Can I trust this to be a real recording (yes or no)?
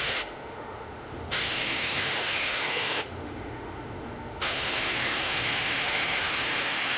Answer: no